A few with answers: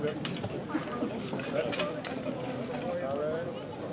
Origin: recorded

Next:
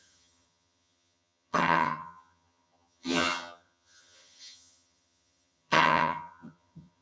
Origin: remade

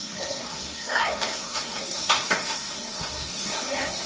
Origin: remade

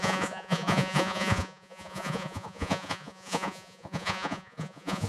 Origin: remade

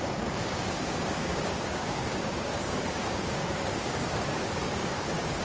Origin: remade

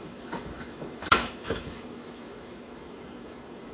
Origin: remade